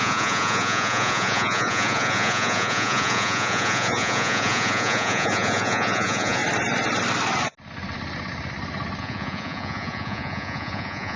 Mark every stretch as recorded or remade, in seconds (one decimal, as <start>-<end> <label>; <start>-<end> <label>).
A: 0.0-6.4 remade; 6.4-9.0 recorded; 9.0-11.2 remade